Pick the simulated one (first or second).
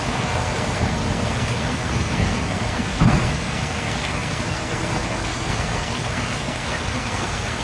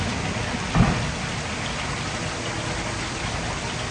first